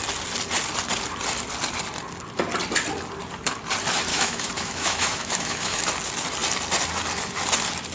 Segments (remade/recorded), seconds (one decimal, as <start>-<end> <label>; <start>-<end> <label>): 0.0-4.1 recorded; 4.1-5.8 remade; 5.8-7.9 recorded